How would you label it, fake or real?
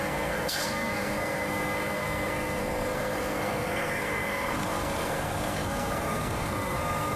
fake